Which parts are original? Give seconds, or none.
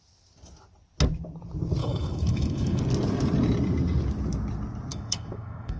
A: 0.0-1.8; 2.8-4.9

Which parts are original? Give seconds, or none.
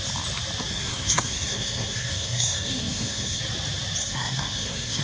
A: 0.0-0.7; 3.4-4.0